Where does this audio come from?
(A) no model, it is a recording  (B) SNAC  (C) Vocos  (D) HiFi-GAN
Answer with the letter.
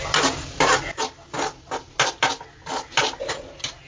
A